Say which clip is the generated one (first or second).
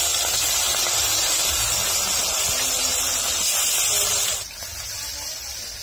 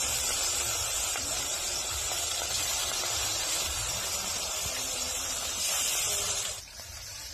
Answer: second